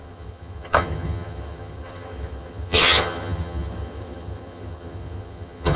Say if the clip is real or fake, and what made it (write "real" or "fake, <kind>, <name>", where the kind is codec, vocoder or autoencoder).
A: fake, vocoder, HiFi-GAN